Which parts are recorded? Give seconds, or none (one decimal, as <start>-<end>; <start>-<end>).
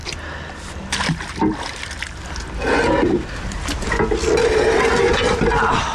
0.0-5.9